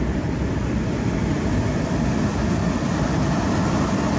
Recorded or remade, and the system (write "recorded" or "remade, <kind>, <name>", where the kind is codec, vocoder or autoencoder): recorded